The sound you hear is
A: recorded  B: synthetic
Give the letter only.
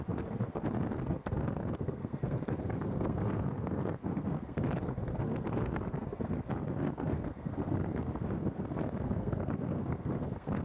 B